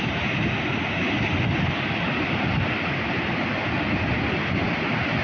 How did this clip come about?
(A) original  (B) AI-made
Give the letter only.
A